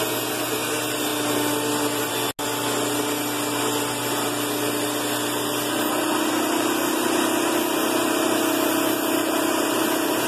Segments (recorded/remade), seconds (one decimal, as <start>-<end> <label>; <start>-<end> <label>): 0.0-10.3 recorded